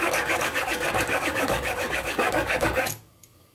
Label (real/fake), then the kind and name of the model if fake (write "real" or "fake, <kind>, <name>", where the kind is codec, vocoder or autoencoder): fake, codec, DAC